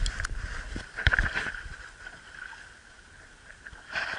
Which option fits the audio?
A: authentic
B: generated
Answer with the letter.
B